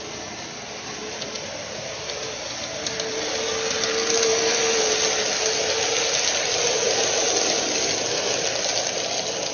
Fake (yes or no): no